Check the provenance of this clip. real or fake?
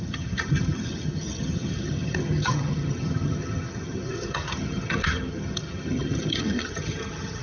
fake